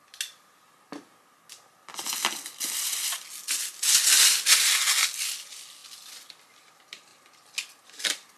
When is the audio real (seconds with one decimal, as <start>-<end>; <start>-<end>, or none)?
0.0-8.4